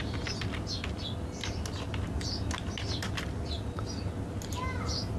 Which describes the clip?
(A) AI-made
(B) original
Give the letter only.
B